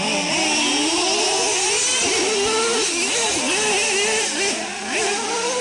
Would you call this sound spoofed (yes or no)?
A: no